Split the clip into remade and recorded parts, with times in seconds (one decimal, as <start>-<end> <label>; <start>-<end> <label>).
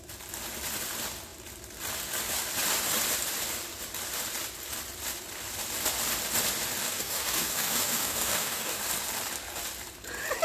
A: 0.0-6.8 recorded; 6.8-8.8 remade; 8.8-10.4 recorded